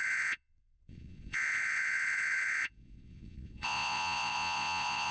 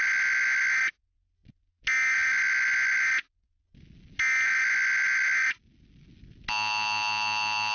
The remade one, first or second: first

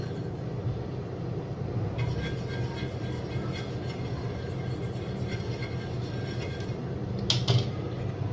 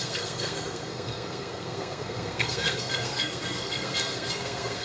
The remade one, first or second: second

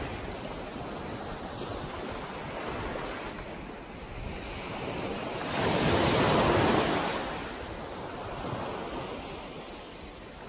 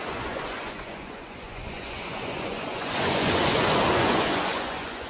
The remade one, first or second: second